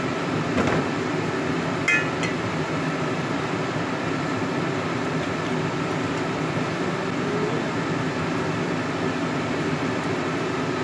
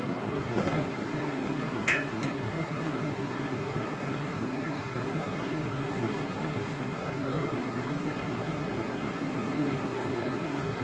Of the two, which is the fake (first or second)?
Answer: second